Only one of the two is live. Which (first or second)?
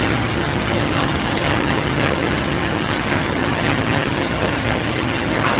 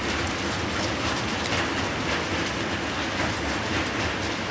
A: second